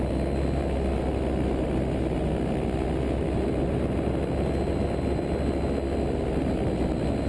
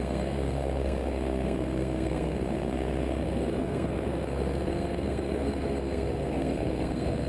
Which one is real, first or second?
first